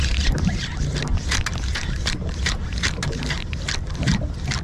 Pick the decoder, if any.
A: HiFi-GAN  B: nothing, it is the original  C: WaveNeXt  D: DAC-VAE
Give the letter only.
B